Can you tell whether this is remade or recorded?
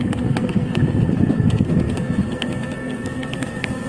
remade